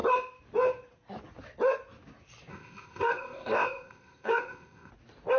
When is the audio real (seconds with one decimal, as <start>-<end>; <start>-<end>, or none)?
0.0-2.5; 4.9-5.4